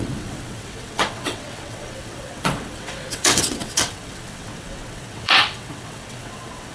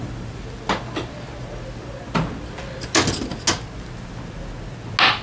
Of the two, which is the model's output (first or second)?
first